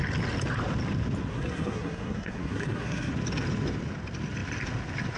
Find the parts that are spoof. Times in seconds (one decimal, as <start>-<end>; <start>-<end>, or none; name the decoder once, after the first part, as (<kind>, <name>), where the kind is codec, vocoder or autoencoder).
1.3-3.1 (codec, SNAC)